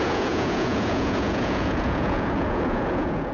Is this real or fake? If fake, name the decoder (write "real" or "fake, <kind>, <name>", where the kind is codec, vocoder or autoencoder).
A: fake, vocoder, Vocos